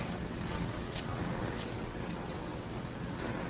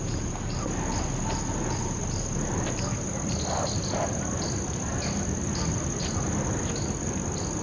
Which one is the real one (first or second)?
second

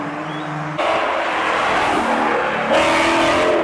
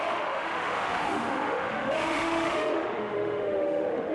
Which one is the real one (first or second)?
first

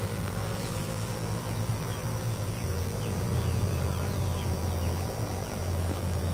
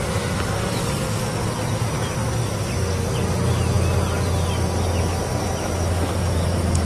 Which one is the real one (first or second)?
second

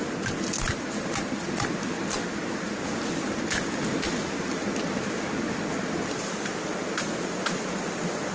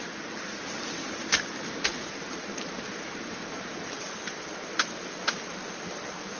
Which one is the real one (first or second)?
first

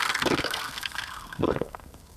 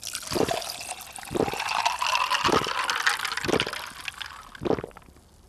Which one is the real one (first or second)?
second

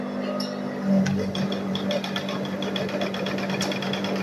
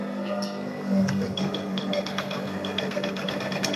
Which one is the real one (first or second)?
first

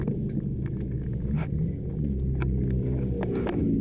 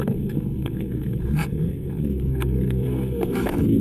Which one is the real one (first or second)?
first